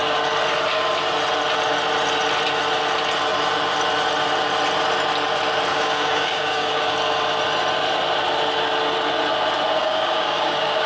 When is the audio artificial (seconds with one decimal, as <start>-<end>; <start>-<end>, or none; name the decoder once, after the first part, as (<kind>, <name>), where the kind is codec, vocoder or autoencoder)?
5.7-6.9 (codec, DAC); 9.8-10.9